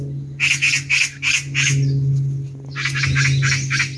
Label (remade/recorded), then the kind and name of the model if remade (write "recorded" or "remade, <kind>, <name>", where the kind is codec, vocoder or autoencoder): recorded